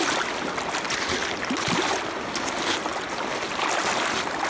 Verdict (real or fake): real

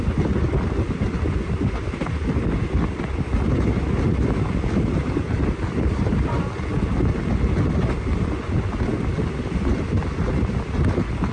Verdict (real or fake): real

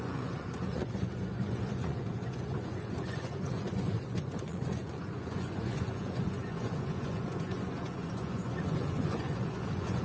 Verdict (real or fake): fake